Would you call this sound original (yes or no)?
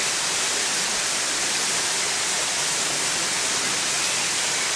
yes